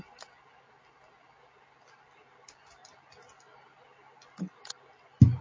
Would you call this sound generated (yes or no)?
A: no